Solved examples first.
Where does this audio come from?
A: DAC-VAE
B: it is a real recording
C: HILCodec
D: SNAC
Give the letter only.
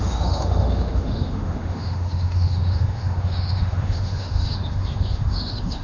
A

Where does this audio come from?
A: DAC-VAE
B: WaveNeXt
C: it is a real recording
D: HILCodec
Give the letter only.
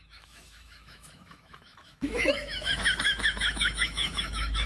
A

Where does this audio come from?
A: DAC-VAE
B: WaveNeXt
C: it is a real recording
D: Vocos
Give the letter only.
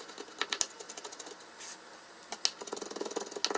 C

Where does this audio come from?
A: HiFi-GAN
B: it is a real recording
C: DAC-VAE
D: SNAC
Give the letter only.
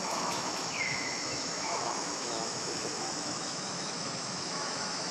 C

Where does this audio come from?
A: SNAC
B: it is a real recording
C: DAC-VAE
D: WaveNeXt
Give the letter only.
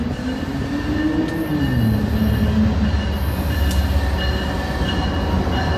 B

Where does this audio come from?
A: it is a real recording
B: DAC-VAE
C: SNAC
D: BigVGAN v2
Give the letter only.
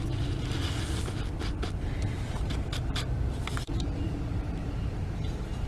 A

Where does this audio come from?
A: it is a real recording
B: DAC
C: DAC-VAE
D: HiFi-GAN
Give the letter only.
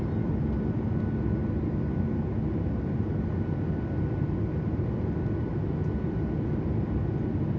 A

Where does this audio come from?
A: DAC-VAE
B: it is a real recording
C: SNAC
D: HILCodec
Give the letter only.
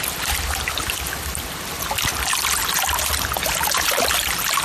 B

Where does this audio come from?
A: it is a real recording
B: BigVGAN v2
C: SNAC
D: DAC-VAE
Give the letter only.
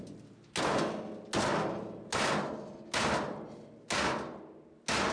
A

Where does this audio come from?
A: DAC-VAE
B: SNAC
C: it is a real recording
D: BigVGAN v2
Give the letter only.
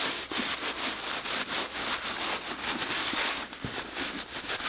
C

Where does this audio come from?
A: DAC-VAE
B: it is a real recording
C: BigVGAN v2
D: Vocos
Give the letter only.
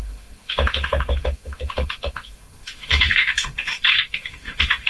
A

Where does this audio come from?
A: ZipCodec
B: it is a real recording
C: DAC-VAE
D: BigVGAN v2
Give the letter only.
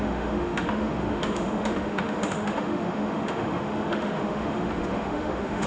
C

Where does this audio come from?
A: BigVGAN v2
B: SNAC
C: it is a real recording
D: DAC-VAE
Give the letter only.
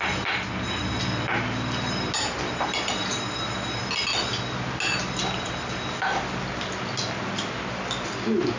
C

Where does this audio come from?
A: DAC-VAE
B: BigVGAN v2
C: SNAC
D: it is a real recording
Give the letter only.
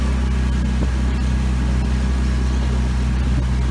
D